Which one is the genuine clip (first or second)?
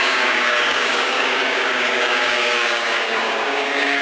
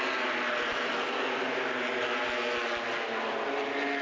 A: second